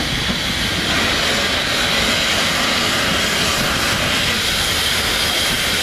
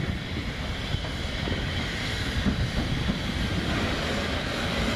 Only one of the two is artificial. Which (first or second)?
second